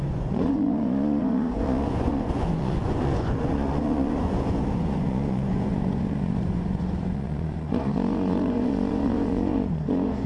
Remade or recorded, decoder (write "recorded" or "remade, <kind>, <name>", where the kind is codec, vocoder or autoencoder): remade, vocoder, Vocos